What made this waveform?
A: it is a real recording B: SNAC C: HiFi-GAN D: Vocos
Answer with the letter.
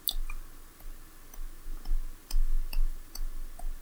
A